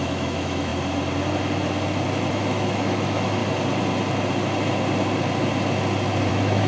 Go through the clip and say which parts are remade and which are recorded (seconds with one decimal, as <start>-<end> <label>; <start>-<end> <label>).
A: 0.0-0.7 remade; 0.7-2.3 recorded; 2.3-3.4 remade; 3.4-6.3 recorded; 6.3-6.7 remade